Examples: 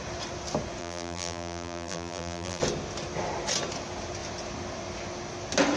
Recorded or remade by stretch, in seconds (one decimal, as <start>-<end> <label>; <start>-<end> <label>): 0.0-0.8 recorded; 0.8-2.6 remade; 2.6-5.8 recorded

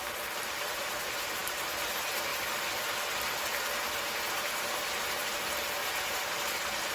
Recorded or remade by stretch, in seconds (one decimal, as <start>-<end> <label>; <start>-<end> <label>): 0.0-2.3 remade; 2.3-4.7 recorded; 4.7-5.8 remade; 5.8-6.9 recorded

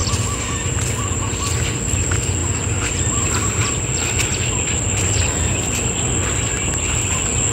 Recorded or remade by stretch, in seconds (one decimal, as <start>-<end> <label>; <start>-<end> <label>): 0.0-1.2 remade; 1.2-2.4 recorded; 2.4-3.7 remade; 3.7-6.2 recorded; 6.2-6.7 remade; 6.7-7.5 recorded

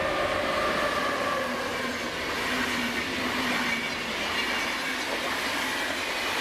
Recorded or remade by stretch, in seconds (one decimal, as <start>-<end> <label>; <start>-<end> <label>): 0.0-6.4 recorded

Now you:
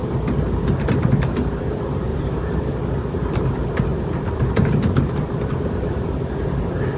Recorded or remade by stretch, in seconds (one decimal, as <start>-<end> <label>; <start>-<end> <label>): 0.0-2.1 recorded; 2.1-2.6 remade; 2.6-3.9 recorded; 3.9-6.4 remade; 6.4-7.0 recorded

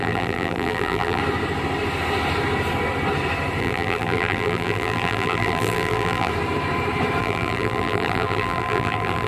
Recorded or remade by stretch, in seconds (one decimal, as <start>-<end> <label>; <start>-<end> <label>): 0.0-1.2 remade; 1.2-3.6 recorded; 3.6-6.3 remade; 6.3-7.2 recorded; 7.2-9.3 remade

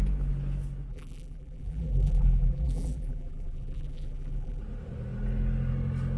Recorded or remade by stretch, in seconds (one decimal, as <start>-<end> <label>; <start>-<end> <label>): 0.0-0.9 recorded; 0.9-4.6 remade; 4.6-6.2 recorded

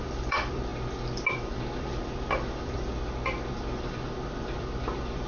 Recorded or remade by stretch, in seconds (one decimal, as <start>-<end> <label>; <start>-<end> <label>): 0.0-0.7 remade; 0.7-1.3 recorded; 1.3-2.9 remade; 2.9-3.5 recorded; 3.5-5.3 remade